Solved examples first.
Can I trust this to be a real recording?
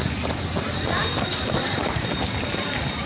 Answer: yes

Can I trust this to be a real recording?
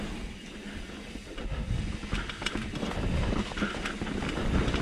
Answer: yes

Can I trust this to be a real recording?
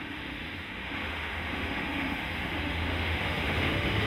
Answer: no